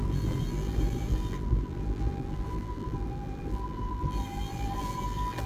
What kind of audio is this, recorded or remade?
remade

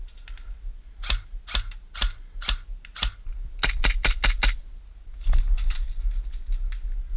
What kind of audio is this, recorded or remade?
recorded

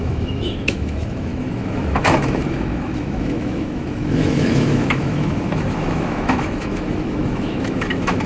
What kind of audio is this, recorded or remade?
remade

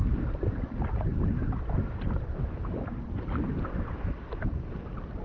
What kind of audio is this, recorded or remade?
recorded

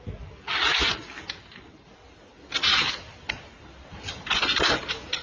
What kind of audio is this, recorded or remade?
recorded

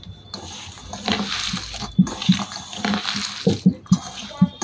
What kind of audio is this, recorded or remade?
recorded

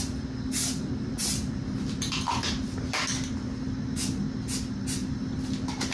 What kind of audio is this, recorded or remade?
recorded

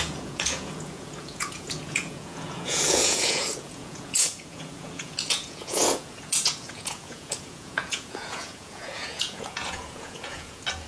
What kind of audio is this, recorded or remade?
remade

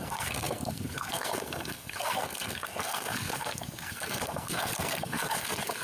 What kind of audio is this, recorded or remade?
remade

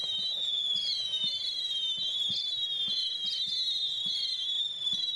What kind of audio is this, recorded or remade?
recorded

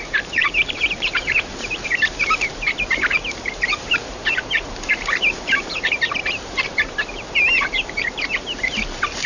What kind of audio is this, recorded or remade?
remade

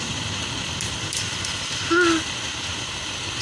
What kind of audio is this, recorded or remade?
recorded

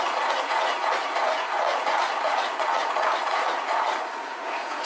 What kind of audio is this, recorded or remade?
remade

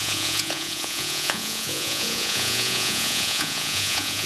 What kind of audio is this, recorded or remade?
remade